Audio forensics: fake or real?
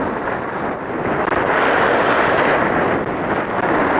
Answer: real